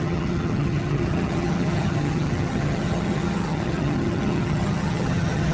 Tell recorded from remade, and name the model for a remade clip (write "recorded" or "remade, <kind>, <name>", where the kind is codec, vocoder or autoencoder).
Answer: remade, vocoder, HiFi-GAN